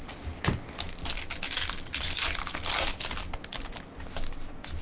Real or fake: real